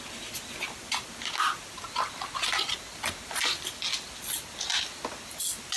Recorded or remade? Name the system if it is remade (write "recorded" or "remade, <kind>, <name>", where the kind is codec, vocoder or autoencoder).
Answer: recorded